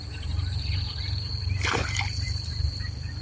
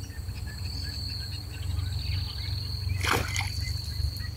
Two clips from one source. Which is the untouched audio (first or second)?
second